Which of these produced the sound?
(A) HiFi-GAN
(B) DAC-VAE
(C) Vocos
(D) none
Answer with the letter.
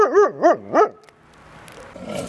D